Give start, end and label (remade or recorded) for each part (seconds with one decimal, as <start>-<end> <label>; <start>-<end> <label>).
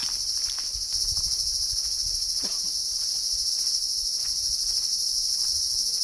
0.0-0.6 remade; 0.6-2.8 recorded; 2.8-3.5 remade; 3.5-4.9 recorded; 4.9-5.6 remade; 5.6-6.0 recorded